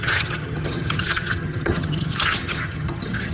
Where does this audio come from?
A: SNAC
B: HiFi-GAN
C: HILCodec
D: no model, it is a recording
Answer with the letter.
B